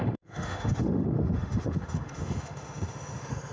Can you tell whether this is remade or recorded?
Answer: remade